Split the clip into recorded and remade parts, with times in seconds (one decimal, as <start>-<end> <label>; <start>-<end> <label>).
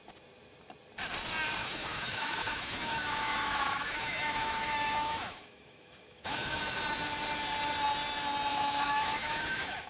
0.0-1.6 recorded; 1.6-6.6 remade; 6.6-8.5 recorded; 8.5-9.9 remade